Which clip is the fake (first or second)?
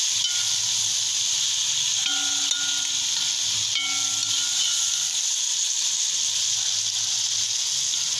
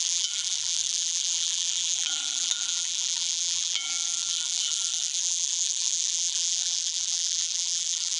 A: second